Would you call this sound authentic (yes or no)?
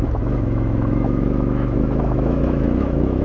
no